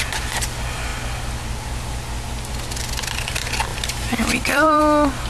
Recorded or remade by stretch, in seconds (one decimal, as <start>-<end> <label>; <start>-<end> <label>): 0.0-3.7 recorded; 3.7-4.8 remade; 4.8-5.3 recorded